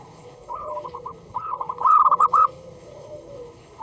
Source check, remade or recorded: remade